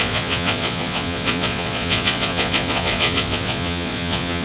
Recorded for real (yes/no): no